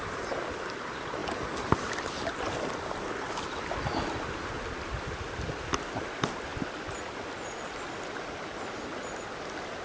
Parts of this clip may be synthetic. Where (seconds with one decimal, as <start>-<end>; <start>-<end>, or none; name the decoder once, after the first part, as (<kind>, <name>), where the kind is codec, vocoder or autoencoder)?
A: none